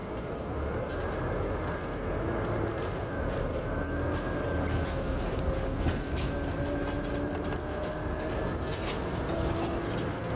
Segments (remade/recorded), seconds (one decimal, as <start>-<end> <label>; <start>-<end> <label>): 0.0-10.4 recorded